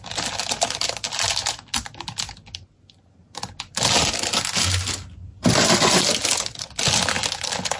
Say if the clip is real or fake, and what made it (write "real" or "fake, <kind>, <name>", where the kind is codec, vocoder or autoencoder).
real